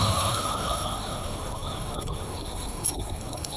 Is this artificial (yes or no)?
yes